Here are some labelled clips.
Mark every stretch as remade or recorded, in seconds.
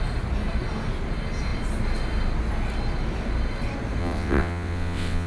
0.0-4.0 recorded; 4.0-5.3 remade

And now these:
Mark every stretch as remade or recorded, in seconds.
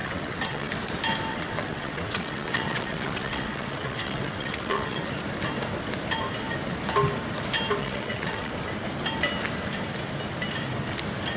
0.0-0.7 remade; 0.7-1.3 recorded; 1.3-5.1 remade; 5.1-7.8 recorded; 7.8-8.5 remade; 8.5-11.4 recorded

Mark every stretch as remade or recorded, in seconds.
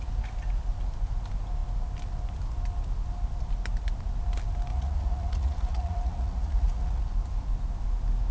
0.0-4.7 recorded; 4.7-7.0 remade; 7.0-8.3 recorded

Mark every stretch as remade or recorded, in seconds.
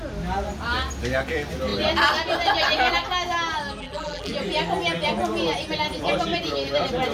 0.0-3.8 recorded; 3.8-4.3 remade; 4.3-7.1 recorded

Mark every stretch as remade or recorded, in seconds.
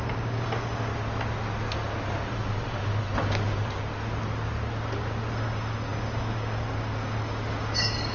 0.0-0.9 remade; 0.9-5.3 recorded; 5.3-8.1 remade